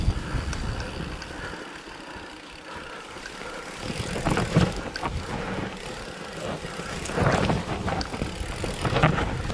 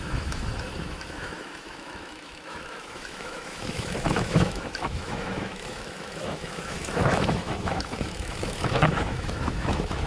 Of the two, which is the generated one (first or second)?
second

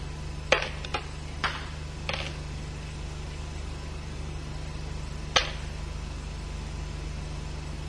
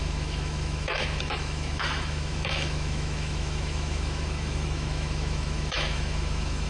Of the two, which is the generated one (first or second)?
second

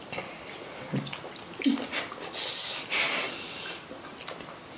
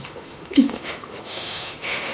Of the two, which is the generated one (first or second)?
second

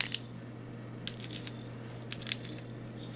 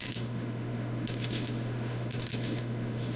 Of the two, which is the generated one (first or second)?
second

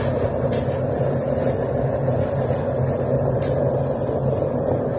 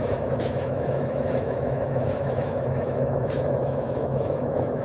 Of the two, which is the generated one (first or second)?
second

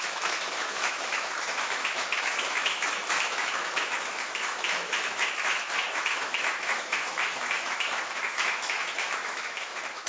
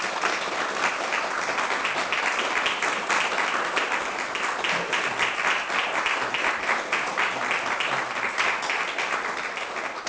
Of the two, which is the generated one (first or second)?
first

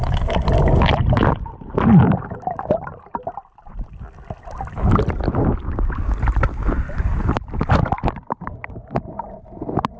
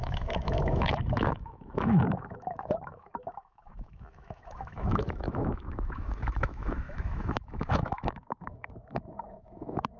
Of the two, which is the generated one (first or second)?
second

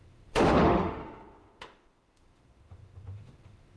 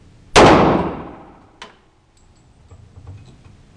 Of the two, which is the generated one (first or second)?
first